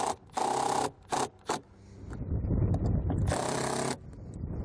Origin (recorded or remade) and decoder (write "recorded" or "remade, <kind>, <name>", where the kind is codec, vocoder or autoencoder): recorded